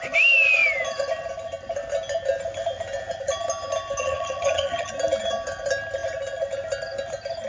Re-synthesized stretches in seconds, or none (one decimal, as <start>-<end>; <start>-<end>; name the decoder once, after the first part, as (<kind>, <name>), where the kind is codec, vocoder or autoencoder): 4.0-4.9 (vocoder, HiFi-GAN)